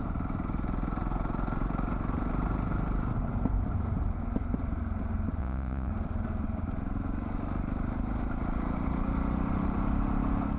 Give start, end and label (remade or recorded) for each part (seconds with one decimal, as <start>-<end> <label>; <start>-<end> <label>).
0.0-5.4 recorded; 5.4-5.9 remade; 5.9-10.6 recorded